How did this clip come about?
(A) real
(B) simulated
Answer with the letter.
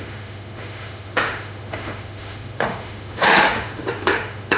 B